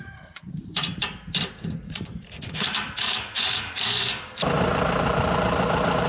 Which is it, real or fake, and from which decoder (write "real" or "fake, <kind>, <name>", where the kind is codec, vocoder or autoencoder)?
fake, vocoder, BigVGAN v2